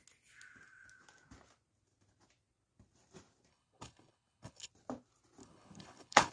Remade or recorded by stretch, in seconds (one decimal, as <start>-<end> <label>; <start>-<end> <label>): 0.0-3.5 recorded; 3.5-4.7 remade; 4.7-5.4 recorded; 5.4-6.3 remade